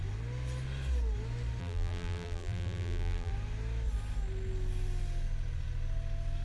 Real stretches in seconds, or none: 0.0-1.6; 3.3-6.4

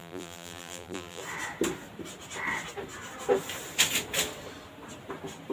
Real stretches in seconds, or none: 1.2-5.5

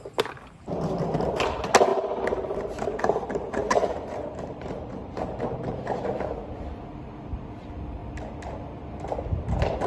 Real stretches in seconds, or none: 0.0-1.9; 6.0-9.9

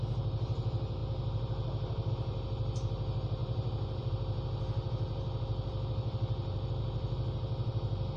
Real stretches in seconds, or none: none

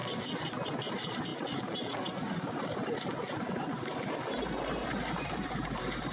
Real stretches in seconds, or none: 0.0-0.9; 1.3-3.6

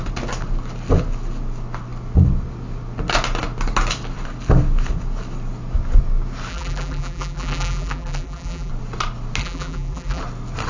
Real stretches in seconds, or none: 0.0-6.5; 8.7-9.4; 10.2-10.7